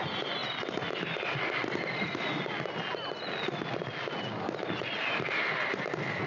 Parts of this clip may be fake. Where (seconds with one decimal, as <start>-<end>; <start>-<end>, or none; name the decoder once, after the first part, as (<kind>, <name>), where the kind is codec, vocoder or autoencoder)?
none